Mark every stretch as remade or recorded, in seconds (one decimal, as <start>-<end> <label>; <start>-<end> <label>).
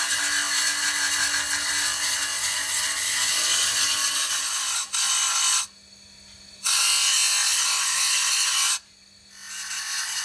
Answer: 0.0-10.2 recorded